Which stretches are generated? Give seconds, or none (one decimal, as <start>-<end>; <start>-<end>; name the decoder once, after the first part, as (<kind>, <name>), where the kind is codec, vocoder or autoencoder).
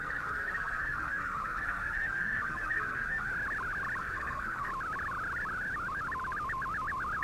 0.0-3.3 (codec, SNAC); 4.0-4.7